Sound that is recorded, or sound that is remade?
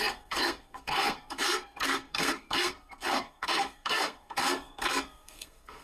remade